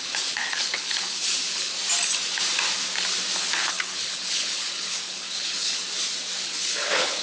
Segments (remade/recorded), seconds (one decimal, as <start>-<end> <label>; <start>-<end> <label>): 0.0-1.7 remade; 1.7-3.4 recorded; 3.4-5.8 remade; 5.8-6.4 recorded; 6.4-7.2 remade